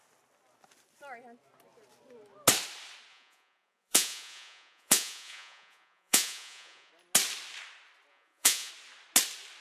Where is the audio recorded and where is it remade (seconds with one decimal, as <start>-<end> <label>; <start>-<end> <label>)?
0.0-3.1 recorded; 3.1-6.9 remade; 6.9-8.1 recorded; 8.1-8.7 remade; 8.7-9.6 recorded